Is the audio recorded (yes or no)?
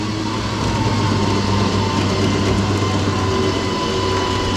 yes